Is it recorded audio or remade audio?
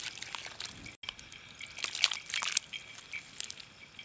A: recorded